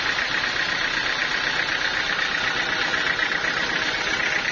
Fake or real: real